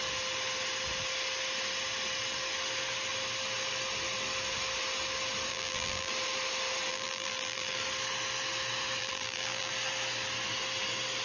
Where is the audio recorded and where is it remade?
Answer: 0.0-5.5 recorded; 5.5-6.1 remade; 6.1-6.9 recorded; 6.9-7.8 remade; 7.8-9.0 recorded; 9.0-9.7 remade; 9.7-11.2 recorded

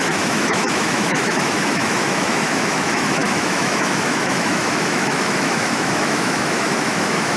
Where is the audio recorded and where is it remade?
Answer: 0.0-7.4 remade

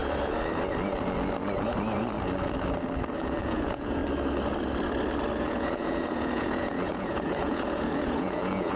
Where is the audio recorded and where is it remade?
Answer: 0.0-3.2 recorded; 3.2-4.0 remade; 4.0-5.4 recorded; 5.4-8.8 remade

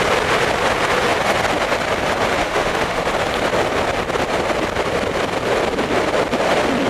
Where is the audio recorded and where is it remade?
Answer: 0.0-2.4 recorded; 2.4-3.1 remade; 3.1-6.9 recorded

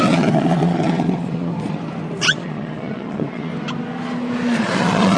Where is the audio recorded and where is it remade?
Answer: 0.0-1.5 remade; 1.5-2.2 recorded; 2.2-3.5 remade; 3.5-4.6 recorded; 4.6-5.2 remade